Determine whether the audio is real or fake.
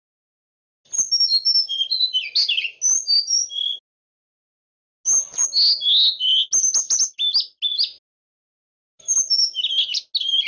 real